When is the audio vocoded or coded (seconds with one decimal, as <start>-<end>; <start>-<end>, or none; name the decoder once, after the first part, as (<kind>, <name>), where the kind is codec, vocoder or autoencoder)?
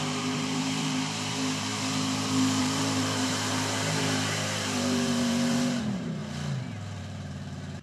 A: 0.0-1.7 (vocoder, BigVGAN v2); 2.6-6.2; 7.0-7.8